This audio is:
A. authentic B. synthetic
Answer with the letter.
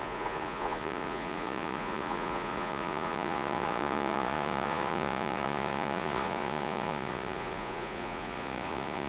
B